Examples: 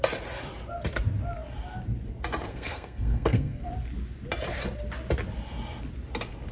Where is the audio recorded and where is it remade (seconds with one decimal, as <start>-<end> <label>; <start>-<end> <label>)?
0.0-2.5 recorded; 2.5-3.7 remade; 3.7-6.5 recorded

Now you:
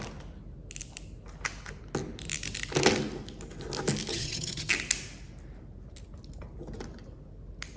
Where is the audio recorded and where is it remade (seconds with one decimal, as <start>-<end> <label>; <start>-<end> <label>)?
0.0-4.1 recorded; 4.1-4.7 remade; 4.7-7.8 recorded

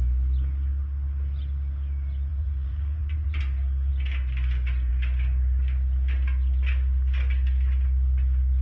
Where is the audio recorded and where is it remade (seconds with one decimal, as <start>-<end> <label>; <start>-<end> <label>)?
0.0-2.3 recorded; 2.3-3.4 remade; 3.4-8.6 recorded

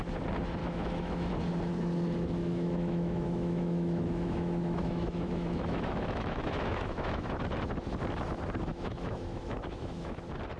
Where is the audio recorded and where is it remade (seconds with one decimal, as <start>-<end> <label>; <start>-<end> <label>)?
0.0-0.6 recorded; 0.6-1.3 remade; 1.3-2.4 recorded; 2.4-7.4 remade; 7.4-8.7 recorded; 8.7-10.2 remade; 10.2-10.6 recorded

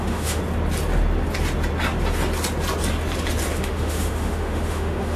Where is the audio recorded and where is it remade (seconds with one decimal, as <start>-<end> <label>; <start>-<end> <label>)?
0.0-0.4 remade; 0.4-3.5 recorded; 3.5-5.2 remade

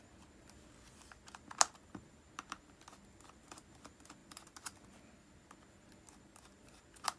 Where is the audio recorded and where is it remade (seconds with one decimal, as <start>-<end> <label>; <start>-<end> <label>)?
0.0-7.2 recorded

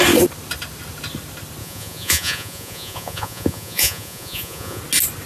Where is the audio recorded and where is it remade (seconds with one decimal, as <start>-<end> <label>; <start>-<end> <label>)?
0.0-1.6 recorded; 1.6-4.8 remade; 4.8-5.3 recorded

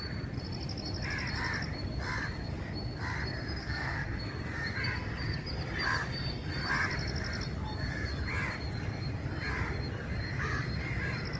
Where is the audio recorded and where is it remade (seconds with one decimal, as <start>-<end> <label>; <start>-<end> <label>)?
0.0-3.6 recorded; 3.6-4.2 remade; 4.2-11.4 recorded